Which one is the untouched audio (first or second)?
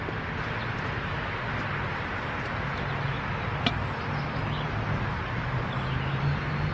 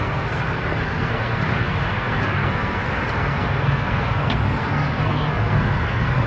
first